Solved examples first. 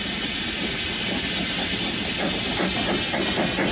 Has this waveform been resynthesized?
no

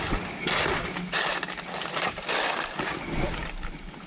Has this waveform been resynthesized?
no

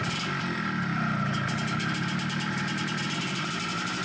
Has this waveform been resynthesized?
no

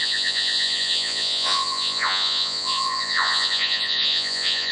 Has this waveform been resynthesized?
yes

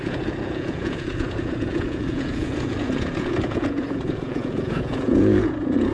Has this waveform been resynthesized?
yes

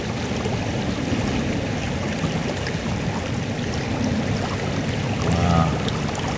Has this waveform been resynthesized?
no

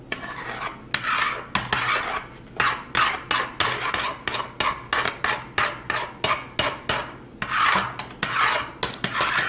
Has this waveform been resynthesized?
no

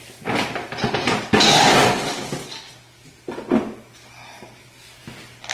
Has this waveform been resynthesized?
no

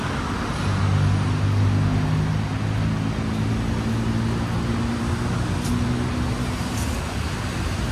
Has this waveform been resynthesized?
no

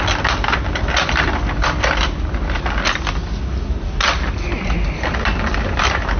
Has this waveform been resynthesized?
no